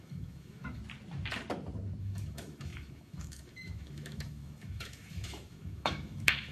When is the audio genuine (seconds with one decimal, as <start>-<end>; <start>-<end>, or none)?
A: 0.8-2.0

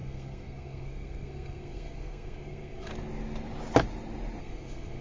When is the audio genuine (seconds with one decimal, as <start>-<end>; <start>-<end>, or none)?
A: 2.9-4.4